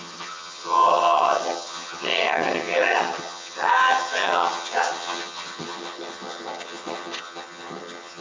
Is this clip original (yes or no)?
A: no